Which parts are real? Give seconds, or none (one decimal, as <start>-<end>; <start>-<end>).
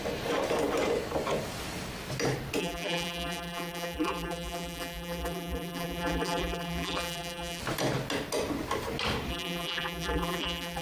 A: 0.0-2.6; 7.6-9.3